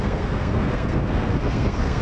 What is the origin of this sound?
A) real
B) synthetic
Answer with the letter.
B